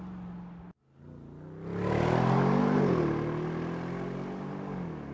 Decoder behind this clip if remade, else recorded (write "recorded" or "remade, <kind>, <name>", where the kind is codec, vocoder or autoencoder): recorded